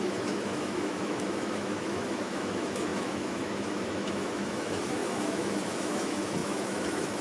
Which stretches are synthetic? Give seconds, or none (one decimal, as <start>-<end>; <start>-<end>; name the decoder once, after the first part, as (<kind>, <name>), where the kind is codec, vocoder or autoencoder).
0.0-7.2 (autoencoder, DAC-VAE)